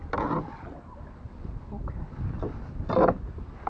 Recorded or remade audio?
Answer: recorded